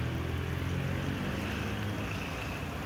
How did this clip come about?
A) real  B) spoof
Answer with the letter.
A